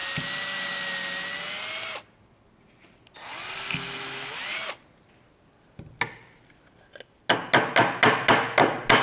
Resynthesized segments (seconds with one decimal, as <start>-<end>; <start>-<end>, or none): none